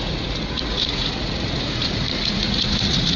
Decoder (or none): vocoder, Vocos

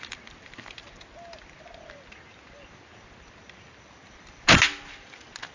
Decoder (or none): none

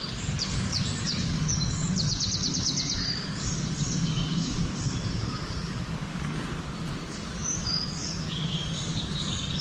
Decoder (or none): codec, DAC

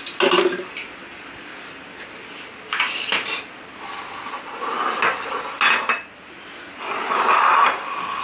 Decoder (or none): none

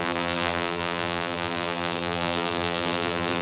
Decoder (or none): vocoder, BigVGAN v2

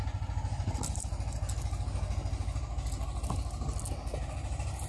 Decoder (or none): none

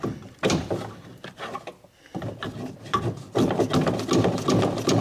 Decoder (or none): none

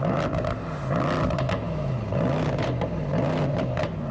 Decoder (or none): none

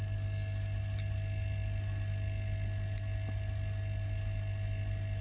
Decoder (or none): none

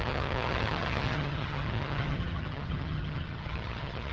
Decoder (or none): vocoder, HiFi-GAN